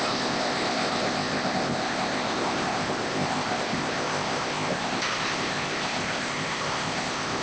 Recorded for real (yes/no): no